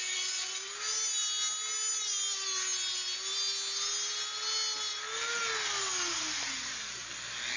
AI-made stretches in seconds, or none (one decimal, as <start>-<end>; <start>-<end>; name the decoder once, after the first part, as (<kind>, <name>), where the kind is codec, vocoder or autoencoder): 0.0-0.5 (vocoder, Vocos)